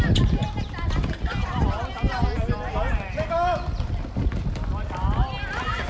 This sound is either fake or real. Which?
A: real